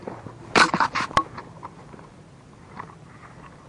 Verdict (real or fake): real